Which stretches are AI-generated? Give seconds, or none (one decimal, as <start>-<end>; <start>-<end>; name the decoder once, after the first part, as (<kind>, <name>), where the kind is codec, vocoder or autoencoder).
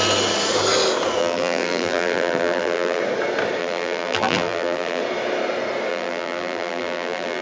1.2-3.0 (vocoder, BigVGAN v2); 3.6-5.0; 5.9-7.4